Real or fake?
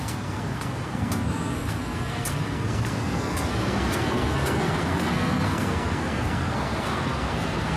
fake